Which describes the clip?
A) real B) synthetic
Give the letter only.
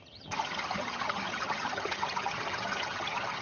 B